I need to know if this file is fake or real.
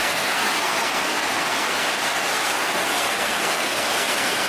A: fake